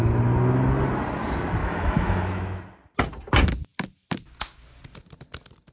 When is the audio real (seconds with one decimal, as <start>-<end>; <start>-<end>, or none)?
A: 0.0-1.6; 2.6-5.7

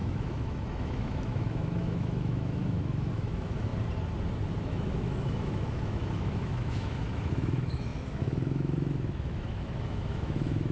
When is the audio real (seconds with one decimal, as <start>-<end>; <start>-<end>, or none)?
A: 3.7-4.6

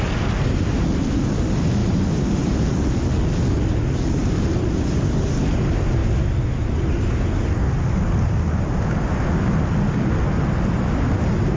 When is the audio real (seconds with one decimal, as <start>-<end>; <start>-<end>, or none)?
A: 0.0-11.6

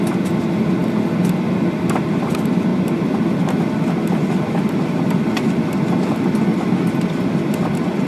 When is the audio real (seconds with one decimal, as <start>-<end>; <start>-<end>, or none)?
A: 0.0-8.1